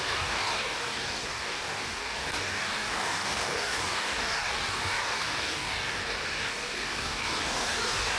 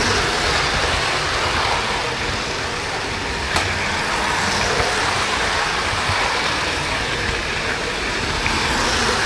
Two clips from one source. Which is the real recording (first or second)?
second